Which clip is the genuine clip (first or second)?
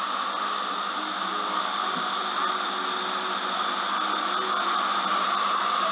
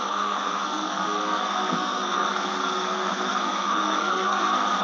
first